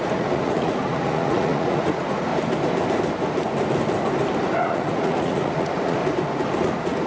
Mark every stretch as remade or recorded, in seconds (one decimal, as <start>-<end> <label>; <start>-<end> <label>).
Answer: 0.0-2.3 remade; 2.3-4.6 recorded; 4.6-6.0 remade; 6.0-6.6 recorded; 6.6-7.1 remade